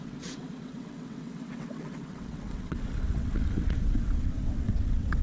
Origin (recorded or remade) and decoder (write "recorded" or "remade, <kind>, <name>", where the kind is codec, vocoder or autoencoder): remade, vocoder, WaveNeXt